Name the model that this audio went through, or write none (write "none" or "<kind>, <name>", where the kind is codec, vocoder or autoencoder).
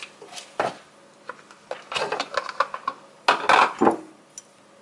none